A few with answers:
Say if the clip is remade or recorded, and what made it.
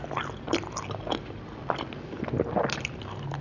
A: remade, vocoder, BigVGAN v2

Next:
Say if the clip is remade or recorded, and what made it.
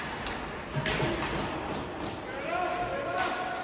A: recorded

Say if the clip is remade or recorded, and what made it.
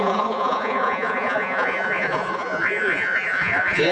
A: remade, vocoder, Vocos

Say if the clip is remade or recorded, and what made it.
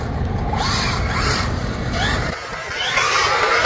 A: remade, vocoder, BigVGAN v2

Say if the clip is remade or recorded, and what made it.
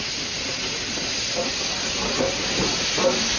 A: recorded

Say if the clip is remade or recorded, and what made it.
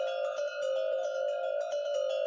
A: recorded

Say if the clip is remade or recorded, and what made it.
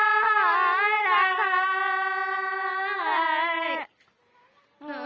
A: recorded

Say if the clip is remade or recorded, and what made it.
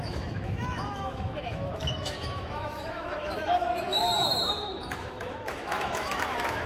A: remade, autoencoder, DAC-VAE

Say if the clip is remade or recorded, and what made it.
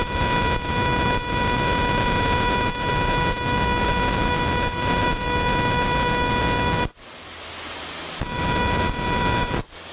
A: recorded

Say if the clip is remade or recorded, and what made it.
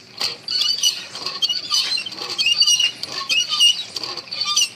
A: recorded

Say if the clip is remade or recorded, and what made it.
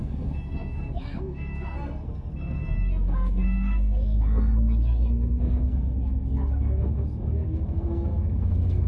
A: remade, codec, SNAC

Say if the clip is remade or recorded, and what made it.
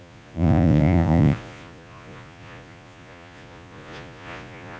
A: remade, vocoder, Vocos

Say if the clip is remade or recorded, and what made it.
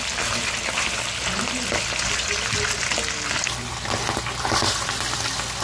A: recorded